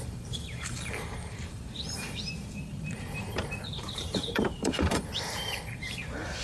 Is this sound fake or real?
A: fake